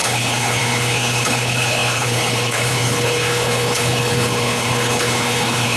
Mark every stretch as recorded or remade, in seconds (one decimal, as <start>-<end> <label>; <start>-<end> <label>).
0.0-5.8 remade